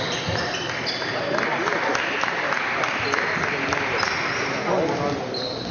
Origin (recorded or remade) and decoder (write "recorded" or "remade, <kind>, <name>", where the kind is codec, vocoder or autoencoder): recorded